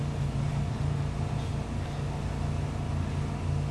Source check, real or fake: real